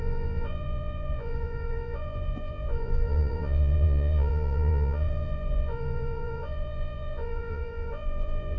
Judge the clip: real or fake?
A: fake